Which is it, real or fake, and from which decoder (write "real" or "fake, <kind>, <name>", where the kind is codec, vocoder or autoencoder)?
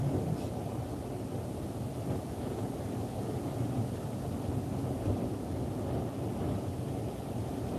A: real